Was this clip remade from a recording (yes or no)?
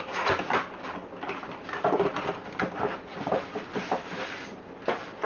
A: no